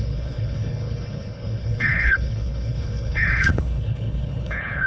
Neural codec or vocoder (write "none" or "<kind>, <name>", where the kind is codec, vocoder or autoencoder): codec, HILCodec